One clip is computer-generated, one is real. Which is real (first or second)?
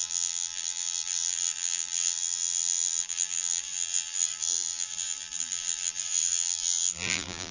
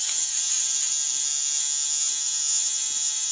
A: second